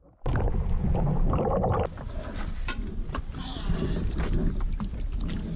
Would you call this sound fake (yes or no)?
yes